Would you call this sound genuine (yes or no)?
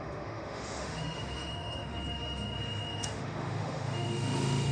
no